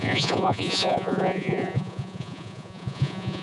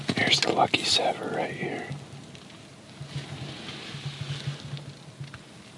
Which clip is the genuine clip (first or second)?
second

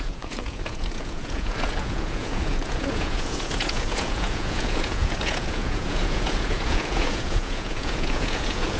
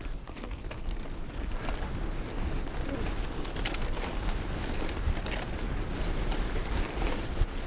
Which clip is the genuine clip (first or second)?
second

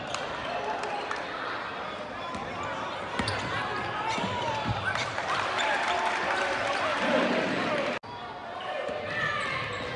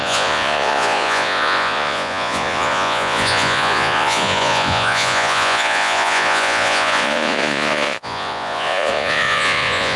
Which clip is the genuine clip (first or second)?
first